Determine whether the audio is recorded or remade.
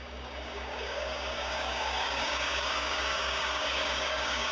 remade